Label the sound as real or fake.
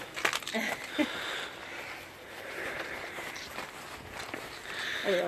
real